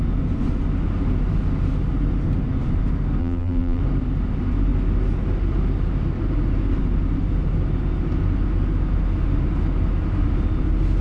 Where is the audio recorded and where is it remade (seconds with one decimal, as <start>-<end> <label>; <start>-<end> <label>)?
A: 0.0-3.2 recorded; 3.2-3.8 remade; 3.8-11.0 recorded